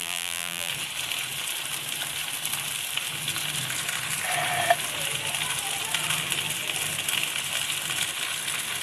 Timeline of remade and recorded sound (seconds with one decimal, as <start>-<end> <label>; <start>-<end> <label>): 0.0-0.7 remade; 0.7-8.8 recorded